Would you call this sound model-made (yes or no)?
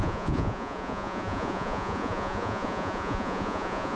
yes